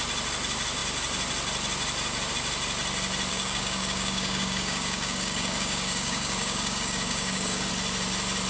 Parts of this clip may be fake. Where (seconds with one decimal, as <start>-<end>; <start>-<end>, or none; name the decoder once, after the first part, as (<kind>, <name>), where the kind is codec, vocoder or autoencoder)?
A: 3.3-7.7 (codec, DAC)